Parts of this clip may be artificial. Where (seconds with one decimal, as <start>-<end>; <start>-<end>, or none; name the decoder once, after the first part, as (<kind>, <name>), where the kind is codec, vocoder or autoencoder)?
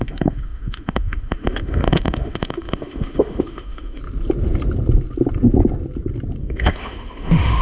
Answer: 0.0-4.0 (autoencoder, DAC-VAE); 6.4-7.6